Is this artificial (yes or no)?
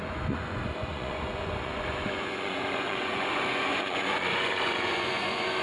yes